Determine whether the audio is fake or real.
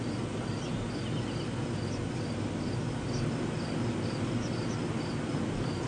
real